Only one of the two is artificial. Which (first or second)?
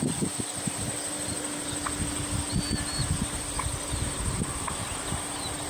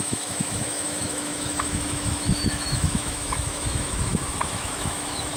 second